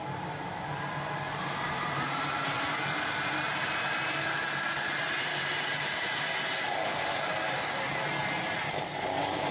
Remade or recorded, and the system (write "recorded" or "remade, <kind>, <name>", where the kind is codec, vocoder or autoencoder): recorded